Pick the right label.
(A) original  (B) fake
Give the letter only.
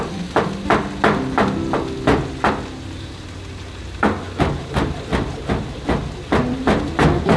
A